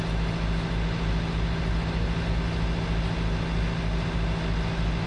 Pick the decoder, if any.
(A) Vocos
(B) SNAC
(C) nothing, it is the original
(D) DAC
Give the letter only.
C